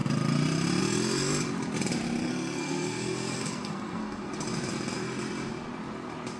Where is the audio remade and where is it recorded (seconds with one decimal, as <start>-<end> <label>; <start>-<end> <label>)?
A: 0.0-2.2 recorded; 2.2-4.3 remade; 4.3-6.4 recorded

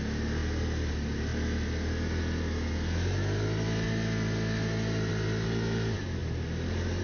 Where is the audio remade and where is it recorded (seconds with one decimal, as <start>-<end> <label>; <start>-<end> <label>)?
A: 0.0-7.0 recorded

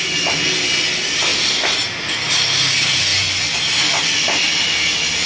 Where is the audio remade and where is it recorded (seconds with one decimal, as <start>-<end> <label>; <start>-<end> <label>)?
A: 0.0-5.3 recorded

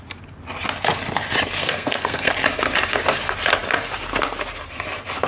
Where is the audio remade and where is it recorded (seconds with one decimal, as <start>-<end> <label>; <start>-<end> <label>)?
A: 0.0-1.6 recorded; 1.6-2.3 remade; 2.3-5.3 recorded

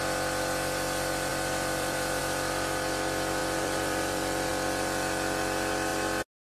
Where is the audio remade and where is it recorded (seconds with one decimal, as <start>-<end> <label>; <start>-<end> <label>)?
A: 0.0-1.3 recorded; 1.3-2.2 remade; 2.2-3.4 recorded; 3.4-4.5 remade; 4.5-6.5 recorded

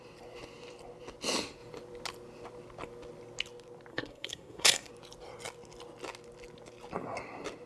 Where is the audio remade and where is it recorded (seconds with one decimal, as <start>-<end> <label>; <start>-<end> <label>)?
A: 0.0-3.9 recorded; 3.9-4.9 remade; 4.9-7.7 recorded